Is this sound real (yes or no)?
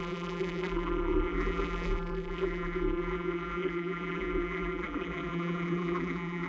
no